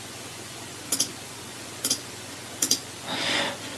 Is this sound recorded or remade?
remade